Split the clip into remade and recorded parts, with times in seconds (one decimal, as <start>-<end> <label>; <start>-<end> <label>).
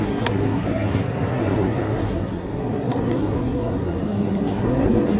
0.0-5.2 remade